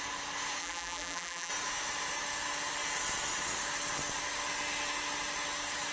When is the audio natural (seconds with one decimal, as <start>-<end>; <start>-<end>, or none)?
0.0-0.6; 1.5-5.9